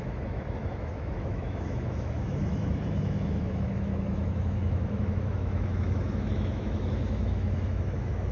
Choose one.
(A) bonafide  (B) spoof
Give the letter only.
B